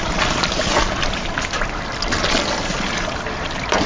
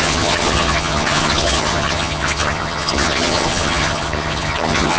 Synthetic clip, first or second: second